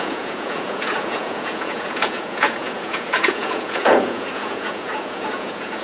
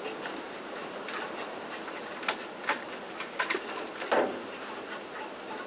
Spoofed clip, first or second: first